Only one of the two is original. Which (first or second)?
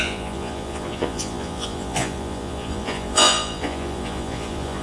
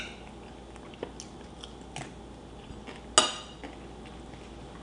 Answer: second